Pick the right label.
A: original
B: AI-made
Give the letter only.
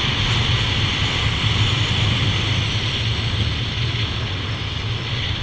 A